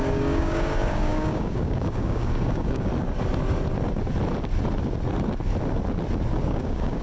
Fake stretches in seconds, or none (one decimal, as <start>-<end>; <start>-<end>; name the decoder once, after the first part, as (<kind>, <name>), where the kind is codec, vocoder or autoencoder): 0.0-2.9 (codec, DAC); 6.4-7.0